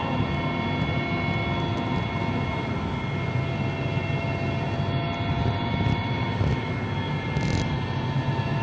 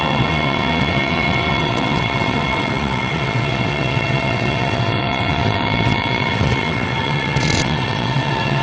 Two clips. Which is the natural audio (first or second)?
first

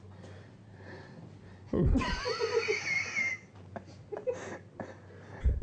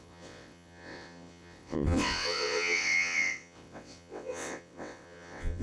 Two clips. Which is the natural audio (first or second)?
first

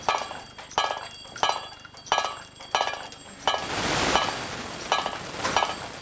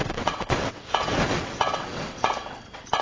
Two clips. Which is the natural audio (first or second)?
first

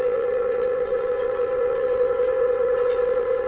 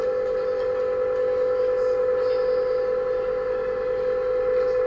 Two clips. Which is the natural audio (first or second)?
second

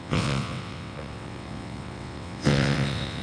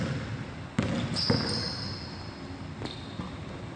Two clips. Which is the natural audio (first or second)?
second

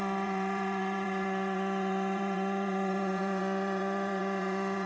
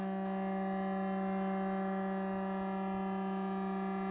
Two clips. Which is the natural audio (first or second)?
second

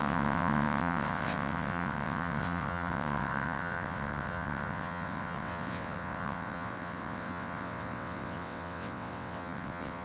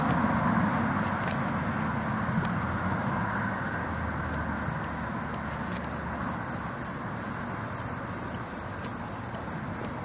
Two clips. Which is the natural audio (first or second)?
second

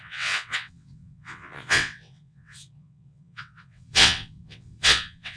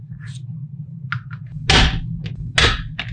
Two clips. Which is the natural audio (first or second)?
second